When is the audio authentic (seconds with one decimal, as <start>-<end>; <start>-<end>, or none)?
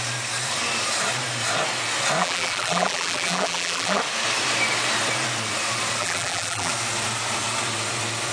0.0-2.2; 4.0-6.0; 6.7-8.3